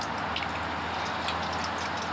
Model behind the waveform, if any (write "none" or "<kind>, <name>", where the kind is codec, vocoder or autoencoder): none